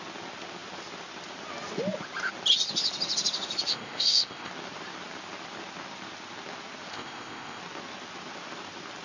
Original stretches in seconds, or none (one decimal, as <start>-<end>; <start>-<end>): 0.0-3.7; 4.5-6.9; 7.6-9.0